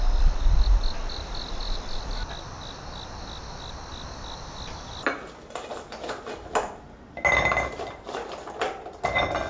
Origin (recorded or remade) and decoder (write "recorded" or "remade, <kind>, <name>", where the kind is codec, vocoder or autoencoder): recorded